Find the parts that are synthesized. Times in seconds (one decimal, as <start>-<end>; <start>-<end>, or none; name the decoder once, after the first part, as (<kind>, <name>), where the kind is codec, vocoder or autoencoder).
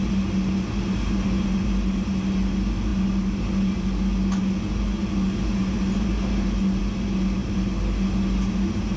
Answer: none